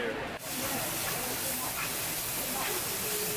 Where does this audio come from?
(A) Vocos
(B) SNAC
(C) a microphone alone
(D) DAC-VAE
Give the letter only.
C